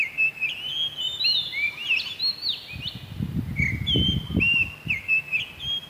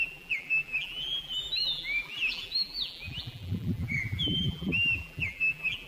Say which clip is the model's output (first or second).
second